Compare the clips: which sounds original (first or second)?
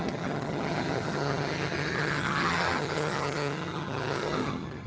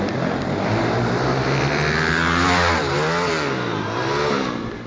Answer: second